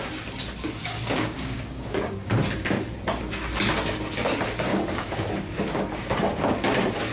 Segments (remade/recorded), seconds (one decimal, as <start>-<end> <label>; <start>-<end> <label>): 0.0-0.8 recorded; 0.8-2.3 remade; 2.3-4.7 recorded; 4.7-5.3 remade; 5.3-7.1 recorded